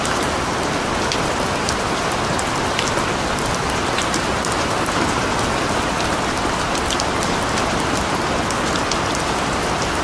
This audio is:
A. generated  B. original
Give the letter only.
B